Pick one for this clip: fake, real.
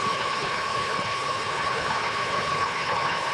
fake